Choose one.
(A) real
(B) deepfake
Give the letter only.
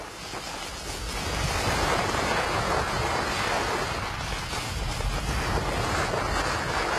A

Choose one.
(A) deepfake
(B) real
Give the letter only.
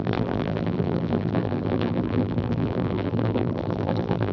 A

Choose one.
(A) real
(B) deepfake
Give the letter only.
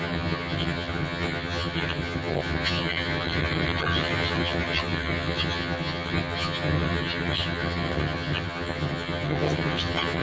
B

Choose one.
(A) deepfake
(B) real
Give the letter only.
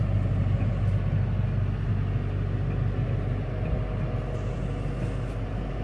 B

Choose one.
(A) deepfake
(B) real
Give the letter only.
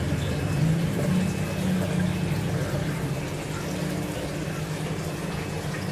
B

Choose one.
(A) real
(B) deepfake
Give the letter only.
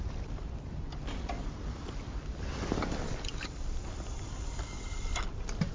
B